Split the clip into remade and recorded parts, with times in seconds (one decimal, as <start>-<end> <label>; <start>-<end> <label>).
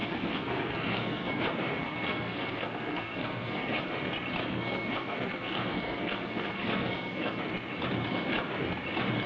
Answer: 0.0-1.4 remade; 1.4-1.8 recorded; 1.8-3.8 remade; 3.8-4.4 recorded; 4.4-7.4 remade; 7.4-9.3 recorded